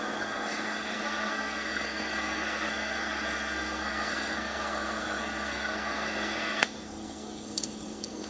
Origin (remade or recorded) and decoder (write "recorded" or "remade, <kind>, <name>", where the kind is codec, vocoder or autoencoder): remade, codec, SNAC